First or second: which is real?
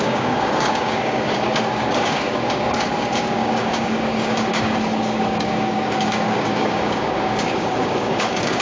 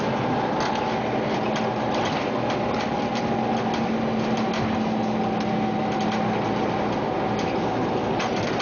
second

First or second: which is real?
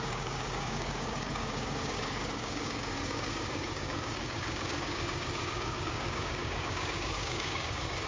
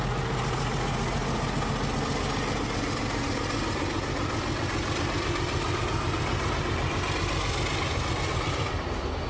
second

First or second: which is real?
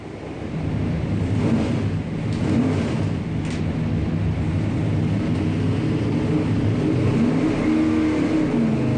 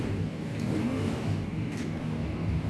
first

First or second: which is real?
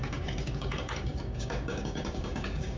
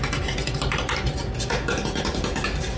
second